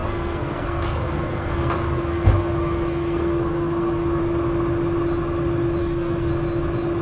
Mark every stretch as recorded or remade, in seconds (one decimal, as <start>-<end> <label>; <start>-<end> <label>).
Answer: 0.0-4.2 remade; 4.2-5.8 recorded; 5.8-6.3 remade; 6.3-7.0 recorded